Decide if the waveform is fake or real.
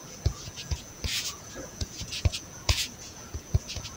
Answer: fake